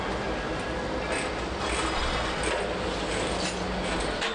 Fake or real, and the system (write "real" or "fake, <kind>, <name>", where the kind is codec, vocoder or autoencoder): real